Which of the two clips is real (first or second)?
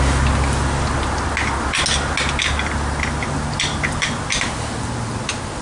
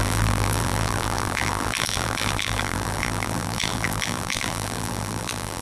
first